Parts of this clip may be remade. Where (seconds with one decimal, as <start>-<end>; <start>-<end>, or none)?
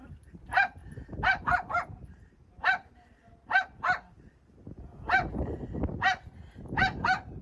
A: none